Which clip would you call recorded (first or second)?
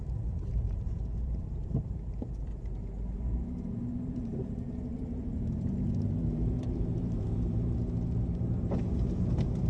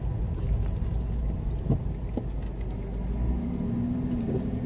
second